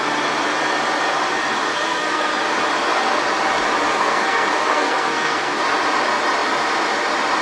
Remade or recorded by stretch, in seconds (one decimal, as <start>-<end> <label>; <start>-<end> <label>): 0.0-1.7 recorded; 1.7-2.4 remade; 2.4-3.9 recorded; 3.9-5.6 remade; 5.6-7.4 recorded